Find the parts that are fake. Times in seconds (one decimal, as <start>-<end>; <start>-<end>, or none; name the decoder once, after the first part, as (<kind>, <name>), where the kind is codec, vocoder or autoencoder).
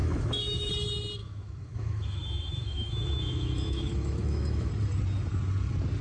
0.0-0.7 (autoencoder, DAC-VAE); 1.2-4.7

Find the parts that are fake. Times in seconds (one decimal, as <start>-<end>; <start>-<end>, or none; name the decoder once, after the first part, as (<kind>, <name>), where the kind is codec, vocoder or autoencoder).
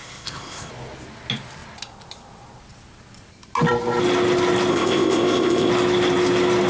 0.0-0.7 (codec, ZipCodec); 4.7-5.7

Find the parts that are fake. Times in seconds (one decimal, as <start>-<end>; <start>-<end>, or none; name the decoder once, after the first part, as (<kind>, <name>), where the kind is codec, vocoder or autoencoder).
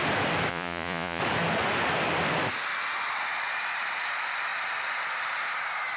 0.5-1.2 (vocoder, Vocos)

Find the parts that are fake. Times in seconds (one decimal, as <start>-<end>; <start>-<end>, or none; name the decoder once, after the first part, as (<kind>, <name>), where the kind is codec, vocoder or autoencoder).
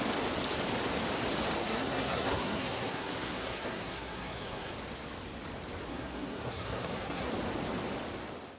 1.6-4.7 (codec, SNAC); 5.9-7.3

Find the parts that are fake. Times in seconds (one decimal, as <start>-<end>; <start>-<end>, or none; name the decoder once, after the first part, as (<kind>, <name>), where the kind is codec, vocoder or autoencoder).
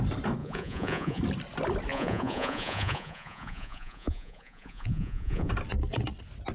0.4-1.2 (vocoder, Vocos); 1.9-5.5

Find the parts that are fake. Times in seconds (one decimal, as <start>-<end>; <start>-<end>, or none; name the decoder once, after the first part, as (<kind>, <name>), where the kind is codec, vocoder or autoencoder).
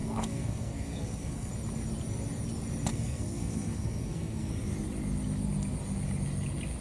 0.0-1.5 (codec, SNAC); 2.9-4.5